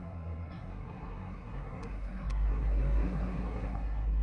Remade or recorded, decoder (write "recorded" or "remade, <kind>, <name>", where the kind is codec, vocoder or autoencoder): remade, codec, SNAC